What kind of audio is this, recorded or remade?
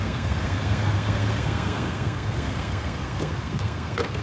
remade